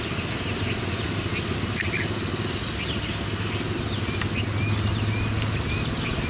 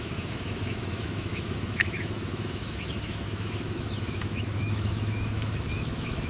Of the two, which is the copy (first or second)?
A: second